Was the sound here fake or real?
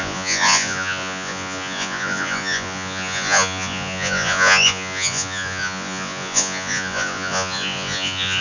fake